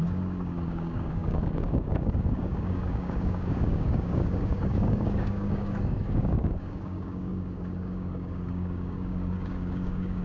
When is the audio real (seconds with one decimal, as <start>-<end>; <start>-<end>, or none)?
none